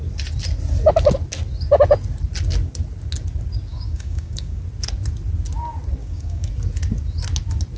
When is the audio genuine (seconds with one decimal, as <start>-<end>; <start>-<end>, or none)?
0.0-3.7; 4.6-6.0; 6.5-7.8